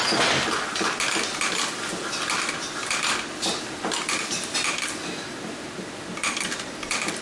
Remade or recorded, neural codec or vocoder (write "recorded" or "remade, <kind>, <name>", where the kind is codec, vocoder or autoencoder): recorded